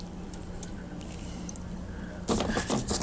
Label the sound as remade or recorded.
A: recorded